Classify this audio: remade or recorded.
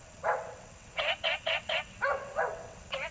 remade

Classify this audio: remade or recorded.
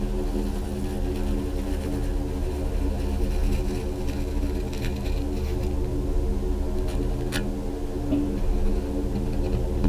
recorded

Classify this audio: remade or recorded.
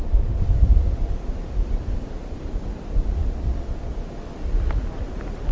recorded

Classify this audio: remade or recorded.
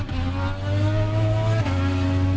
recorded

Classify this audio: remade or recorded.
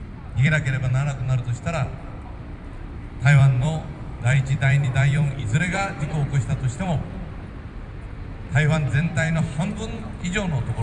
remade